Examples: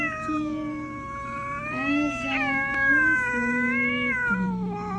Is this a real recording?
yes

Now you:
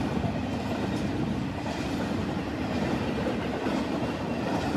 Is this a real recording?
yes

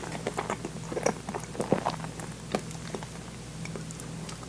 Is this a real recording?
yes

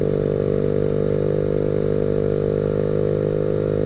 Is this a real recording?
yes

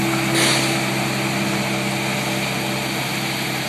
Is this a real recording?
yes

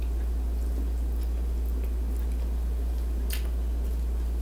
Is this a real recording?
yes